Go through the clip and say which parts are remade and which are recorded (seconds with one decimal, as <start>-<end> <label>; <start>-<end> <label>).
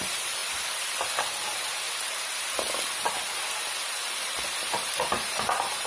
0.0-0.4 remade; 0.4-3.9 recorded; 3.9-5.9 remade